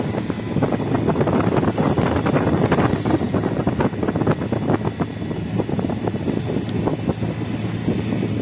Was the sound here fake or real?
real